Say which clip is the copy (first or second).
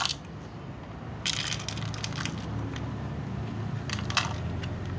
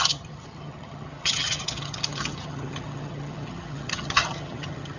second